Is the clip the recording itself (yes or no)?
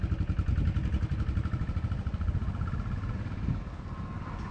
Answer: yes